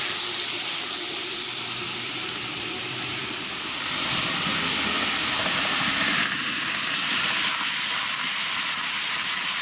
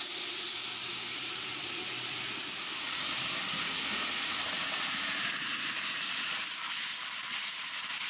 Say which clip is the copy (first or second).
first